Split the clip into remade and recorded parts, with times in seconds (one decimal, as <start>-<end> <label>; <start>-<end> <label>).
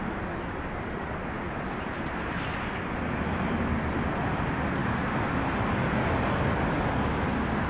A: 0.0-7.7 recorded